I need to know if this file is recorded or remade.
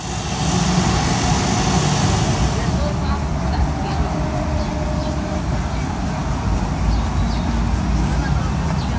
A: recorded